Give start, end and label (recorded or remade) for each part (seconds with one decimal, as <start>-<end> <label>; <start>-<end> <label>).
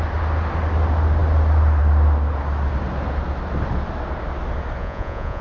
0.0-4.8 recorded; 4.8-5.4 remade